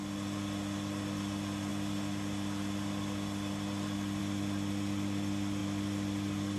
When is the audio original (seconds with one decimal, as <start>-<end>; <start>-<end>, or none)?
0.0-6.6